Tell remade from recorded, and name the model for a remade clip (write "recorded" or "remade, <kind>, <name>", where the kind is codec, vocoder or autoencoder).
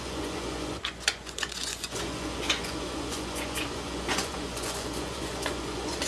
remade, vocoder, Vocos